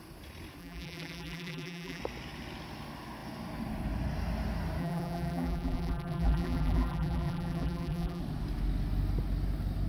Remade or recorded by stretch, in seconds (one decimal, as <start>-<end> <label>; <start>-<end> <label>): 0.0-0.6 recorded; 0.6-2.0 remade; 2.0-4.8 recorded; 4.8-8.2 remade; 8.2-9.9 recorded